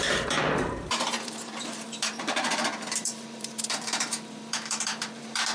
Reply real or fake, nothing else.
fake